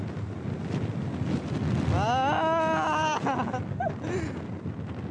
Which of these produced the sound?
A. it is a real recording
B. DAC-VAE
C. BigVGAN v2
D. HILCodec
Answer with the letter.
A